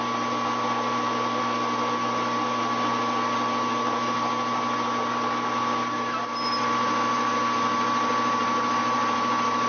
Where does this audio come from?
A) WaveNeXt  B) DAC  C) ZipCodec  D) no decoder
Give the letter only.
D